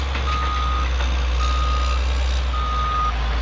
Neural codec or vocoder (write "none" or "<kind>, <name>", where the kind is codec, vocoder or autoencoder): none